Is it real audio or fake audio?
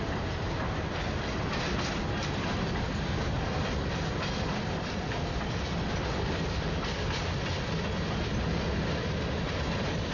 real